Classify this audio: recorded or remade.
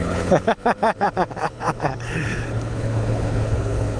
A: remade